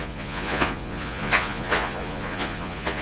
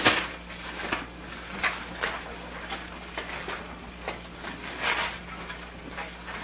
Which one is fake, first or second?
first